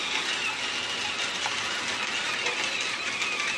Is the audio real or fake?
real